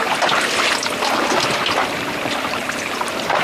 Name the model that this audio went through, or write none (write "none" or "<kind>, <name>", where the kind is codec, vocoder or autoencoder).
none